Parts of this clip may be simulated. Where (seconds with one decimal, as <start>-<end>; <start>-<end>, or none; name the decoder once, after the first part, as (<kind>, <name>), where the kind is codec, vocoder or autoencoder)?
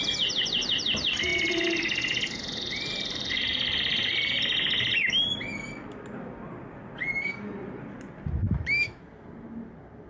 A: 8.4-9.0 (autoencoder, DAC-VAE)